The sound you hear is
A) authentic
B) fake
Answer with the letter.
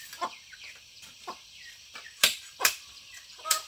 B